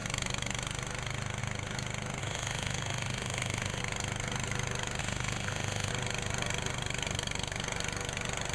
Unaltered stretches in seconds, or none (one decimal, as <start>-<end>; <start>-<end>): 0.0-2.2; 3.8-5.0; 5.9-8.5